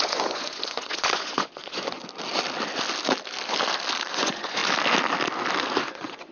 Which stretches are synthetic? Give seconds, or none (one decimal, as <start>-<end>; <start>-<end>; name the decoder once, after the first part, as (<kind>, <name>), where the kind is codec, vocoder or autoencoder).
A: 0.0-2.0 (vocoder, Vocos); 4.1-4.6; 5.8-6.3